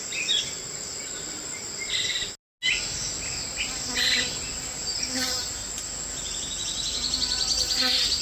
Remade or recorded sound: recorded